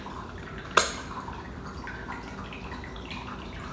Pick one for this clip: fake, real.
real